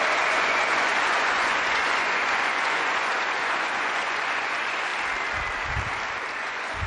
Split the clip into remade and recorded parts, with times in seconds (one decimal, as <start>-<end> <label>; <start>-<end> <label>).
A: 0.0-4.9 remade; 4.9-6.3 recorded; 6.3-6.9 remade